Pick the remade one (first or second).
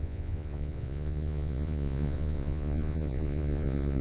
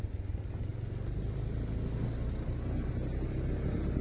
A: first